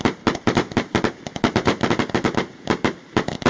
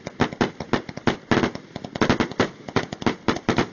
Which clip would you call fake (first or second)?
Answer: first